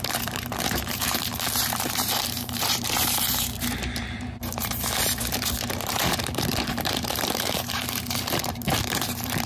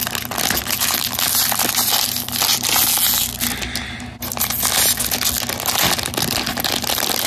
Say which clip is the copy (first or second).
first